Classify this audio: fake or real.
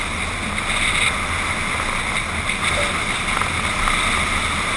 real